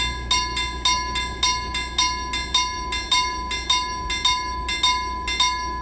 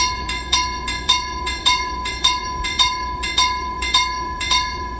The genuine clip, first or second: first